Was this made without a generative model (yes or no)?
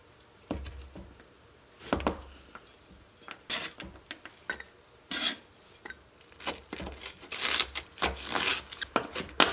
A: yes